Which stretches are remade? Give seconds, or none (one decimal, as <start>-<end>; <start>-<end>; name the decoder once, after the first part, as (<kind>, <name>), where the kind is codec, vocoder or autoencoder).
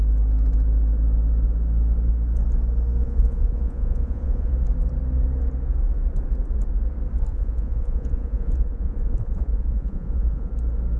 3.0-4.5 (vocoder, Vocos); 7.3-10.5